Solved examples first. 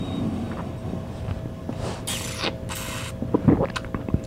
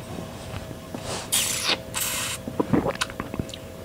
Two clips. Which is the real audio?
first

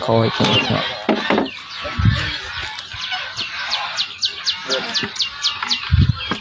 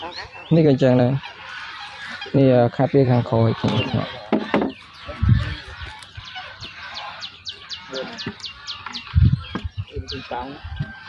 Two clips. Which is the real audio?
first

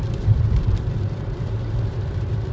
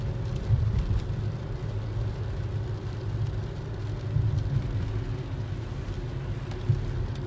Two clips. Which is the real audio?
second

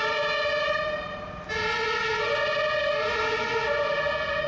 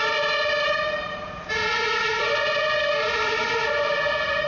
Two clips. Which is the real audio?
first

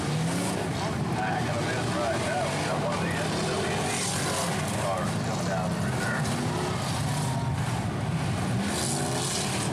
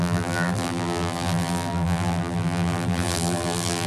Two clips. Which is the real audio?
first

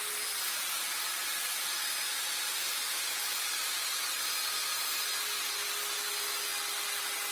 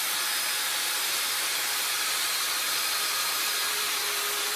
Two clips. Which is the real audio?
first